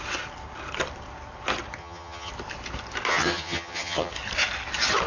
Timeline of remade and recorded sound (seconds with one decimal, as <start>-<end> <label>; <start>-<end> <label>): 0.0-1.8 recorded; 1.8-2.3 remade; 2.3-3.1 recorded; 3.1-4.1 remade; 4.1-5.1 recorded